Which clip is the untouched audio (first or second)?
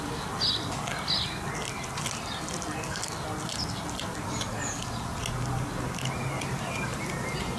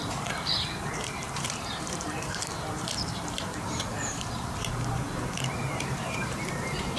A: first